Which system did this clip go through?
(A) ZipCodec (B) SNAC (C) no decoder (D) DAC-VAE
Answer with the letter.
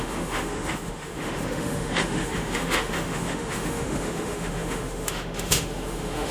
D